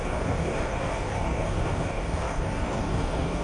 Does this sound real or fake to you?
fake